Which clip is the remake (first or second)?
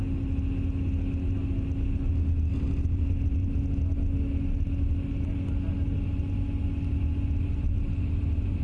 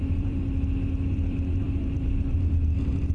second